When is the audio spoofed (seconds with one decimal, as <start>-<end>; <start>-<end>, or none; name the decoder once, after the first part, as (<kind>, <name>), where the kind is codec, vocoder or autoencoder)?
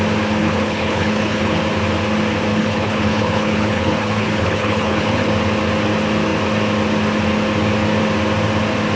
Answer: 0.4-1.6 (codec, HILCodec); 2.5-5.3